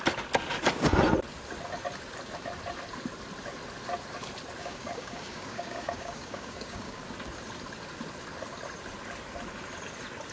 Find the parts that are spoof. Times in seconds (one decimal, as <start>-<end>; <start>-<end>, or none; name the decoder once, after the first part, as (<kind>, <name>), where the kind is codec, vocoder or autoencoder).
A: 4.6-7.0 (codec, DAC)